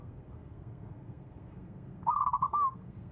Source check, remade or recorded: remade